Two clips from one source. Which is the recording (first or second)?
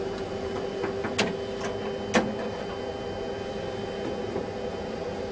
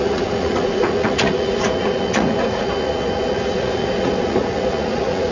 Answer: first